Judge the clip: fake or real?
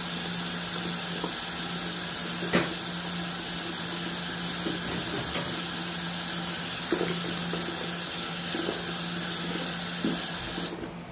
real